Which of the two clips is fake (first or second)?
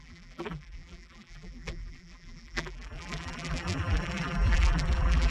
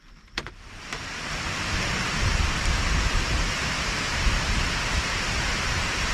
first